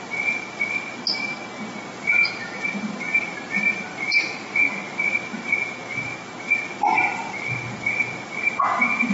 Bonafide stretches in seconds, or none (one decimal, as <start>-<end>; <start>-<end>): 0.0-2.4; 4.3-9.1